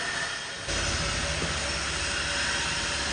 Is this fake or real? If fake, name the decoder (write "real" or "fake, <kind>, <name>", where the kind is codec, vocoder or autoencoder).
real